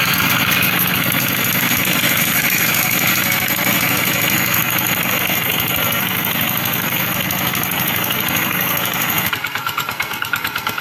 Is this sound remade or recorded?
remade